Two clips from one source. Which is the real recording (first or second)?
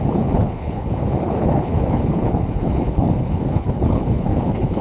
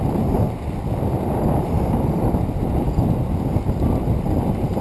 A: second